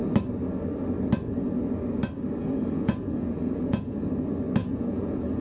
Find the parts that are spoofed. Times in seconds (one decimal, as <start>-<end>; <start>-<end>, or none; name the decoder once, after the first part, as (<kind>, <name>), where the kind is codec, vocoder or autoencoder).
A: 2.4-4.1 (vocoder, Vocos); 4.6-5.4